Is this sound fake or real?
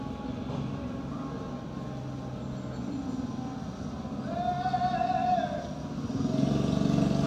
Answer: real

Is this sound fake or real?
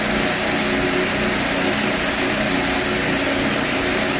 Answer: real